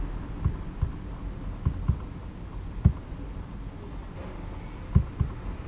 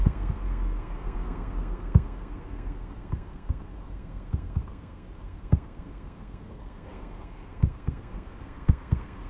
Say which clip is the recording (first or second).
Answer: first